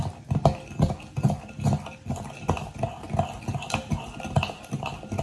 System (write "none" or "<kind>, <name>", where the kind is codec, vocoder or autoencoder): none